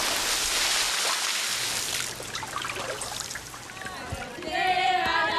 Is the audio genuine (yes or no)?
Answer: yes